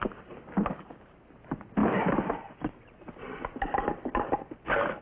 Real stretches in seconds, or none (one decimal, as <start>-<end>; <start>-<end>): 0.0-5.0